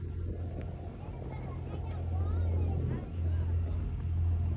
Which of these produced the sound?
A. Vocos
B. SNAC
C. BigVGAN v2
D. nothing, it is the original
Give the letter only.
D